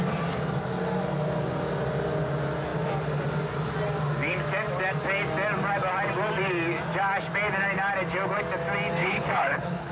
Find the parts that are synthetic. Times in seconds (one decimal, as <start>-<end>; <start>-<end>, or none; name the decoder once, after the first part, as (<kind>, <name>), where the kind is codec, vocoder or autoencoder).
9.0-9.9 (codec, HILCodec)